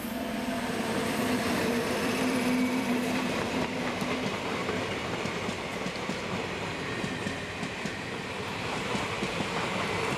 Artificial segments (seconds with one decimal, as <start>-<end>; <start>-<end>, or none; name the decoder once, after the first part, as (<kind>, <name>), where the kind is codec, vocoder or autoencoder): 0.0-4.6 (vocoder, BigVGAN v2); 8.2-10.2